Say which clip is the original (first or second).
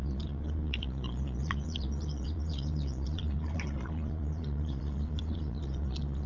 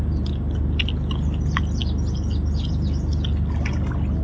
second